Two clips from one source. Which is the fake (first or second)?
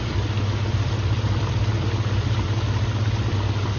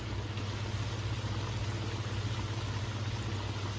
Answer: first